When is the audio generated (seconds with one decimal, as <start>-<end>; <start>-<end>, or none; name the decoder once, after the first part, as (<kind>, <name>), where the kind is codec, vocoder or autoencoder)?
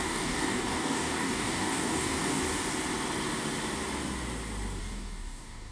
0.0-2.4 (codec, DAC); 4.8-5.7